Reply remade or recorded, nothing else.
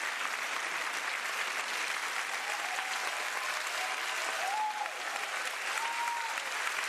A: recorded